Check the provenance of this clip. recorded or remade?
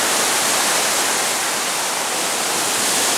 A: recorded